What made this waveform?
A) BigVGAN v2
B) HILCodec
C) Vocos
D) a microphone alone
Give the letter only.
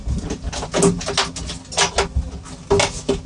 D